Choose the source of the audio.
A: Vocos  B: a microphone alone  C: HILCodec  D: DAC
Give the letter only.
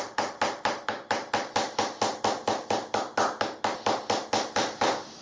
B